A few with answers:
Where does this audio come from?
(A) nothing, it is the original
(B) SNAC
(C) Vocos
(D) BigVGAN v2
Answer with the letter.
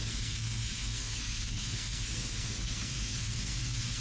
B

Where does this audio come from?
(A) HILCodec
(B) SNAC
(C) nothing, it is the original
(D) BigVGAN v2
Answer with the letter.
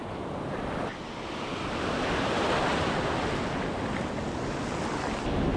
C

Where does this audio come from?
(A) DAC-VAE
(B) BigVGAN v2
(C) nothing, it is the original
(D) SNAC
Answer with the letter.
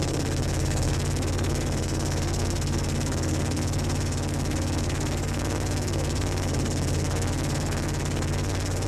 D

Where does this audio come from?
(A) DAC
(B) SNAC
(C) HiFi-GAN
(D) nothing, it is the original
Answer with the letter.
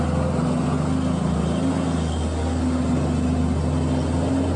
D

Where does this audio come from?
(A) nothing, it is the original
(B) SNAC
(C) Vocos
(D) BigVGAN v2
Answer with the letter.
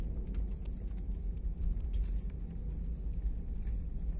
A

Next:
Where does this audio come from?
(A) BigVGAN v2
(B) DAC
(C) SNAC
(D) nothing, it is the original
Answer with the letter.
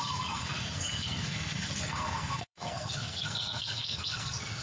C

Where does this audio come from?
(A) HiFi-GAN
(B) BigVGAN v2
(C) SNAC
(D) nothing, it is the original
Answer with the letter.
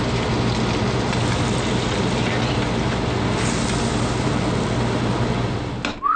D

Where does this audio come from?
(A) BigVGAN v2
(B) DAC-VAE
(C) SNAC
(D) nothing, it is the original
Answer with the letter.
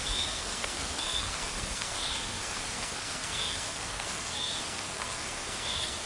C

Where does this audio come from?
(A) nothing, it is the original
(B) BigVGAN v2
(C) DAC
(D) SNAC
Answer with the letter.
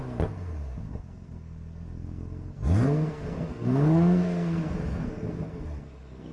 D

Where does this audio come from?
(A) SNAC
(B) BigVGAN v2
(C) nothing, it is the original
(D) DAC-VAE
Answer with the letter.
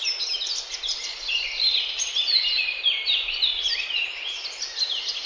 C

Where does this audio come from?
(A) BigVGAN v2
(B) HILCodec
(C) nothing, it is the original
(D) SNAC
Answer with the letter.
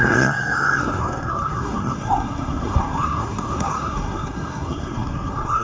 D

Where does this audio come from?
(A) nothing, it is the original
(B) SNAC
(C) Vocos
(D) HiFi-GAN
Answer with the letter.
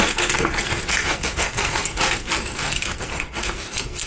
B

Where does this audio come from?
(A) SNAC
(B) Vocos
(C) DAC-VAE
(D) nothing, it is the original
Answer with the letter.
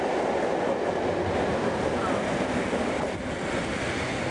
D